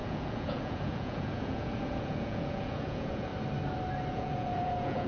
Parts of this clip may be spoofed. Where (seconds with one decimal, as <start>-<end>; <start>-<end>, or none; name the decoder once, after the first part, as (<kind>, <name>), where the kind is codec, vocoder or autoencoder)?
0.0-3.3 (vocoder, Vocos); 4.1-5.1